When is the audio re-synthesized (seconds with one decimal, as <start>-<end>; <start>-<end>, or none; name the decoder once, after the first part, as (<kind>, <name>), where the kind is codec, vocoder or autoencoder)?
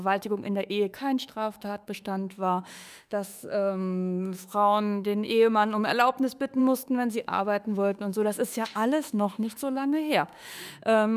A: 0.0-5.9 (autoencoder, DAC-VAE); 6.6-11.2